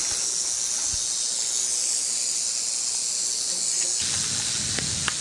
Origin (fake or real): real